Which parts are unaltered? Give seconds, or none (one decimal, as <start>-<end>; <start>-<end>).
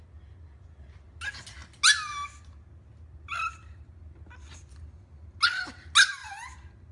0.0-6.9